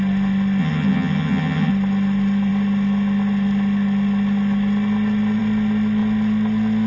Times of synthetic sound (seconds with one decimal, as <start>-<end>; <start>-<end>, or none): 0.6-1.7